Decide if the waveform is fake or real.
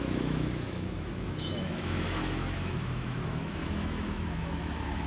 fake